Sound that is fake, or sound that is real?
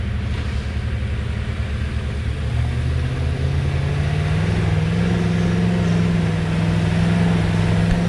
real